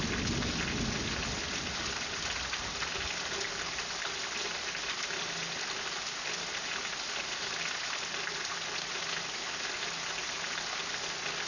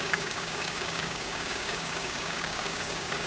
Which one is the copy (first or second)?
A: second